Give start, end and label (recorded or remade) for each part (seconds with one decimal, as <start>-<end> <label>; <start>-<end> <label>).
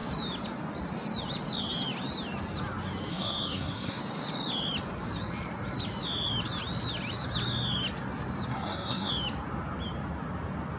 0.0-3.1 recorded; 3.1-4.0 remade; 4.0-8.5 recorded; 8.5-9.1 remade; 9.1-10.8 recorded